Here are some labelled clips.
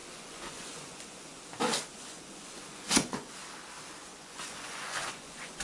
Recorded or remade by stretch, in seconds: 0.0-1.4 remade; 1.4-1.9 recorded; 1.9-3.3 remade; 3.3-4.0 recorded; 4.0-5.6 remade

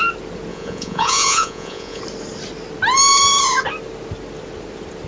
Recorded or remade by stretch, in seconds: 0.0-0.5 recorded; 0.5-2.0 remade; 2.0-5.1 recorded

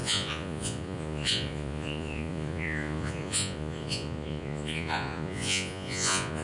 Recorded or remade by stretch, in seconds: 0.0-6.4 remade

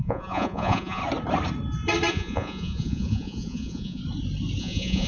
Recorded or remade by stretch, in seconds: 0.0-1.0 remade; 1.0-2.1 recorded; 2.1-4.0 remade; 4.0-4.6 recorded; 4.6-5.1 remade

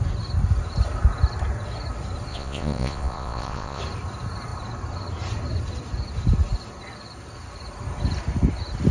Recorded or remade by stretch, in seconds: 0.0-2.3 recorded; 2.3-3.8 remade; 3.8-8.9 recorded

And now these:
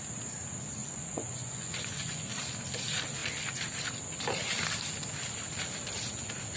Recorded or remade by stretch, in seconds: 0.0-0.8 recorded; 0.8-2.3 remade; 2.3-6.6 recorded

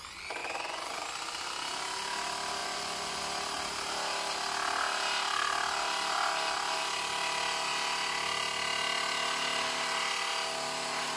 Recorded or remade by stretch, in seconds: 0.0-0.4 recorded; 0.4-1.0 remade; 1.0-2.6 recorded; 2.6-3.2 remade; 3.2-11.2 recorded